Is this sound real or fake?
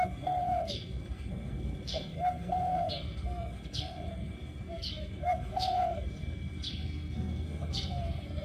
fake